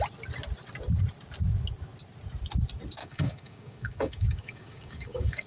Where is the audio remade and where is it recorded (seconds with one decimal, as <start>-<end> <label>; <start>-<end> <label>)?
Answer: 0.0-3.0 recorded; 3.0-5.5 remade